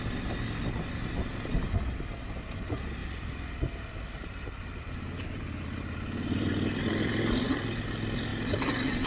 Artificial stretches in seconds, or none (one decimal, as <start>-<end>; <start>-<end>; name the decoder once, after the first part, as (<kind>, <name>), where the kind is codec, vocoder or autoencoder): 3.0-7.8 (vocoder, BigVGAN v2)